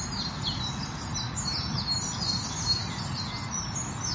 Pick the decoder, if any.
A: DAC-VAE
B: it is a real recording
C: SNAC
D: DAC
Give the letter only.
B